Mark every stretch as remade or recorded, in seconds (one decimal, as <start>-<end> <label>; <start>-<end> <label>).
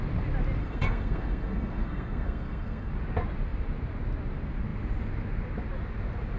0.0-0.6 recorded; 0.6-2.9 remade; 2.9-6.4 recorded